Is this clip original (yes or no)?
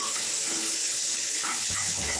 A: no